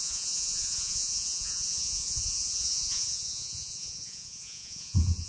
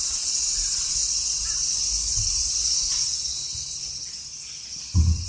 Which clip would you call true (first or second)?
second